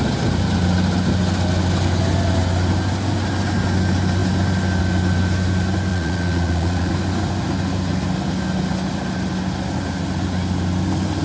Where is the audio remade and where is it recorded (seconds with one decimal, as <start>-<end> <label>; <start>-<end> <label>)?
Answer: 0.0-5.9 recorded; 5.9-6.9 remade; 6.9-11.2 recorded